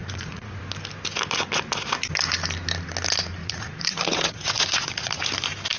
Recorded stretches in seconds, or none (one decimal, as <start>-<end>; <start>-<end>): 0.6-3.4; 5.2-5.8